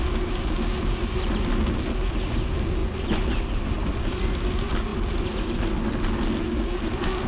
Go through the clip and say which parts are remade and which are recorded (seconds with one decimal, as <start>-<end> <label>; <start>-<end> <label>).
0.0-7.3 recorded